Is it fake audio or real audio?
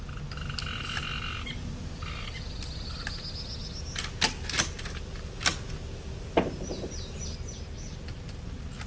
real